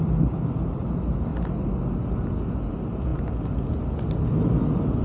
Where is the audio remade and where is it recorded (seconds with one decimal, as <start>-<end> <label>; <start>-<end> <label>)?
0.0-5.0 recorded